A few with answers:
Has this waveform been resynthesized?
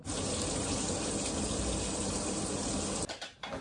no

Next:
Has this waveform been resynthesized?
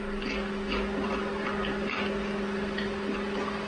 no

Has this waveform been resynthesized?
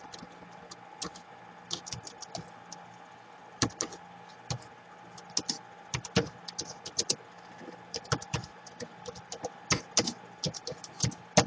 no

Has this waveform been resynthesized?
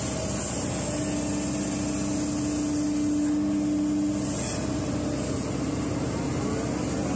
no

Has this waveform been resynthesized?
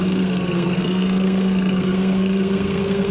yes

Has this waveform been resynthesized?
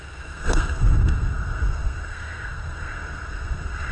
yes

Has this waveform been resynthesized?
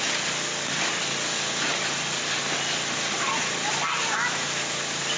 no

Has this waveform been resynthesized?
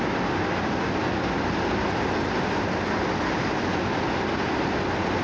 no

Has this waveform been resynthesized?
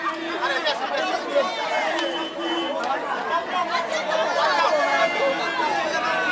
no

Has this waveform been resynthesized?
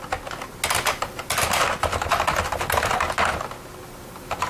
no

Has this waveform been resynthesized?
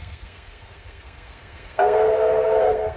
yes